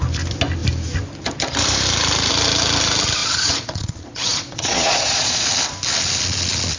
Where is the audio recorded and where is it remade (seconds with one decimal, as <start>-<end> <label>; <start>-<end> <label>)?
0.0-3.2 recorded; 3.2-5.5 remade; 5.5-6.8 recorded

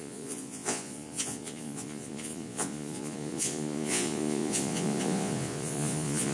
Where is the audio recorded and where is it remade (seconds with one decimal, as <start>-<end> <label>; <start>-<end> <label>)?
0.0-6.3 remade

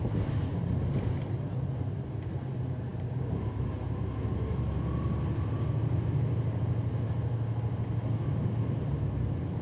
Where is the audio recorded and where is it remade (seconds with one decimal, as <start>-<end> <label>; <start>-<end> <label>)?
0.0-9.6 recorded

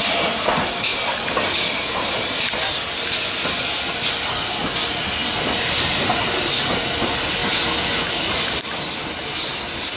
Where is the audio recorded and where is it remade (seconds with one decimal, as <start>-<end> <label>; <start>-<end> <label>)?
0.0-10.0 recorded